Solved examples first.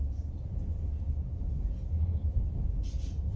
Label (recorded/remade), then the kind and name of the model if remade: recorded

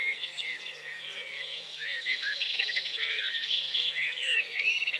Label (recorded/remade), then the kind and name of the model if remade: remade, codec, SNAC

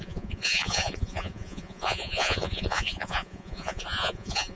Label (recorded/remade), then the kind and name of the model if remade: remade, vocoder, Vocos